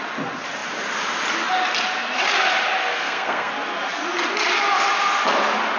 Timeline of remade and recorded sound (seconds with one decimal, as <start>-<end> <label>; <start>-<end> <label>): 0.0-2.9 recorded; 2.9-3.5 remade; 3.5-5.8 recorded